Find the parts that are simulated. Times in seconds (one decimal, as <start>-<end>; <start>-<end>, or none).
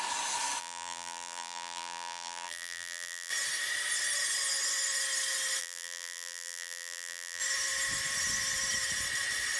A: 0.6-3.3; 5.6-7.4